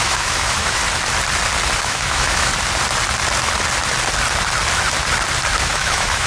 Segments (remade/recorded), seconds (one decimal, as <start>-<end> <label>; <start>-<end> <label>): 0.0-0.8 remade; 0.8-1.8 recorded; 1.8-2.5 remade; 2.5-5.6 recorded; 5.6-6.3 remade